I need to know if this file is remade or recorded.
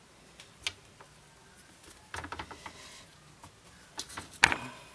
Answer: recorded